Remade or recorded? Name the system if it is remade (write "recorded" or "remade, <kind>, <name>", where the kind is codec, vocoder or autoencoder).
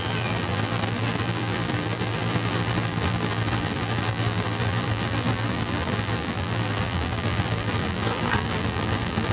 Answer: remade, vocoder, BigVGAN v2